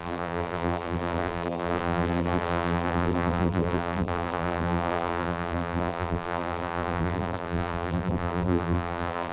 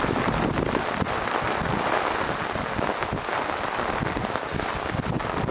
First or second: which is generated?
first